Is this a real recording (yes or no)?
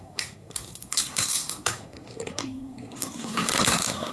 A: no